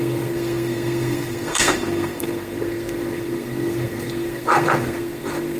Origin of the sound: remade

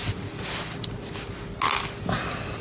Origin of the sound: recorded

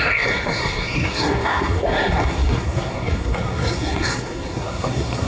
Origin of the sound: remade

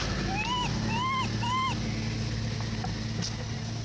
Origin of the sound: recorded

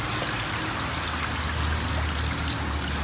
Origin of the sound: recorded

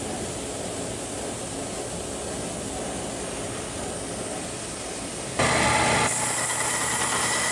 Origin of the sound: recorded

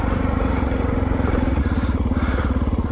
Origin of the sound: remade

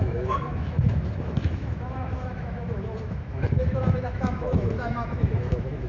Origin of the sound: remade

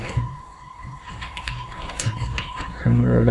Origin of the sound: remade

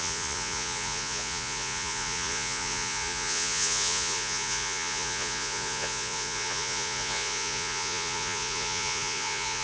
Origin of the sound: remade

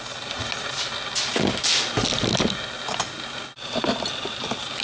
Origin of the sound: recorded